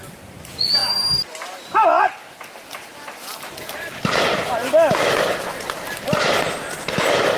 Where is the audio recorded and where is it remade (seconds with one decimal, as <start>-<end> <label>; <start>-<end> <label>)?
0.0-7.4 recorded